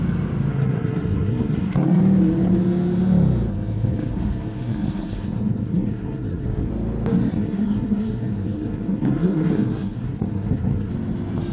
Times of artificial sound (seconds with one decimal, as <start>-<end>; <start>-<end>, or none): 0.5-2.0; 3.5-6.7; 7.3-10.9